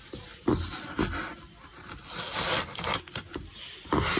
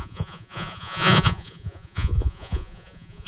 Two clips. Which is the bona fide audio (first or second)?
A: first